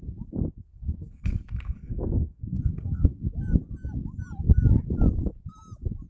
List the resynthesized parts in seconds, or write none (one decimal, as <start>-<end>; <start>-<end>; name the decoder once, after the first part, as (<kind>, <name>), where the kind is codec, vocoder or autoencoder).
0.7-3.2 (codec, SNAC)